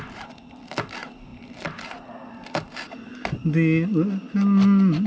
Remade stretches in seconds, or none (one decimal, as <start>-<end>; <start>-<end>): none